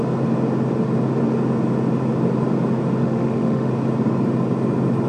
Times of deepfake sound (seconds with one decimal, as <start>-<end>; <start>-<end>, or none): 3.0-3.7